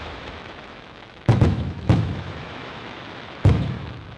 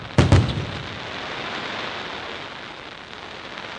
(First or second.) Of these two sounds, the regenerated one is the first